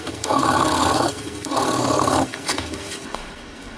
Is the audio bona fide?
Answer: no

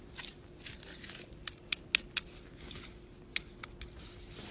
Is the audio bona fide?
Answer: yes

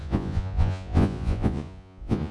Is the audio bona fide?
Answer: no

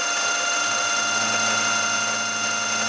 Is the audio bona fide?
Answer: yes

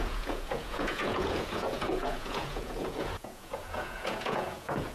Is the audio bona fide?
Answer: no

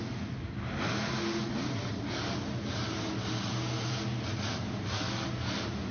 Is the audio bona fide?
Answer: yes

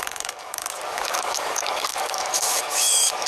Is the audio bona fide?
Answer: no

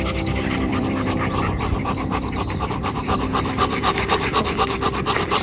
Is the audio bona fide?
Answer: no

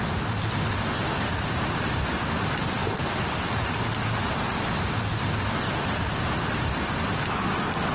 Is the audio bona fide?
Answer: yes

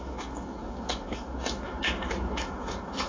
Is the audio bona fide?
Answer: no